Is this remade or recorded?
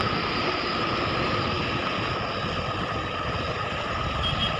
recorded